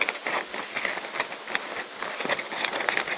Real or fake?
real